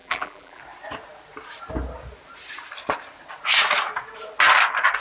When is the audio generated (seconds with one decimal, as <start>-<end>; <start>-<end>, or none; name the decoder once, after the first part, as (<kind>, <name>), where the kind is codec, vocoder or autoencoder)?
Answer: 0.0-0.6 (vocoder, BigVGAN v2)